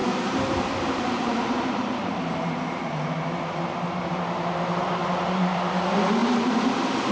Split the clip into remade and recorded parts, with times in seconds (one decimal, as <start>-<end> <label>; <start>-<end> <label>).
0.0-4.1 remade; 4.1-5.0 recorded; 5.0-5.8 remade; 5.8-6.2 recorded; 6.2-7.1 remade